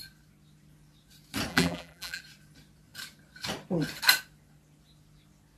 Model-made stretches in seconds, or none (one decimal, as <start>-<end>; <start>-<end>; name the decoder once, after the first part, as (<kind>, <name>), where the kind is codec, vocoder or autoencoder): 1.5-2.2 (vocoder, BigVGAN v2)